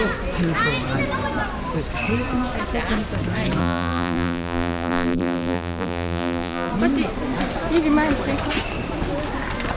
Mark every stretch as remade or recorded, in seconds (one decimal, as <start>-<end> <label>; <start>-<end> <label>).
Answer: 0.0-3.6 recorded; 3.6-6.7 remade; 6.7-9.8 recorded